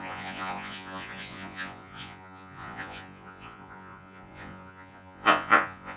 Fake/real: fake